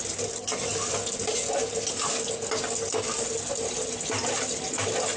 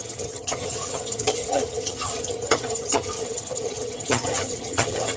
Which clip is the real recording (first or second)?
first